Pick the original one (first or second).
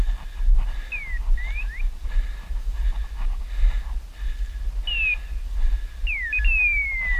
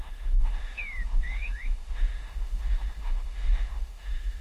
first